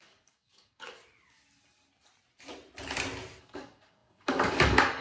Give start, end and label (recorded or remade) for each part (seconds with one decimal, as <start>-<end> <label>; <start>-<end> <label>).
0.0-1.0 remade; 1.0-3.4 recorded; 3.4-5.0 remade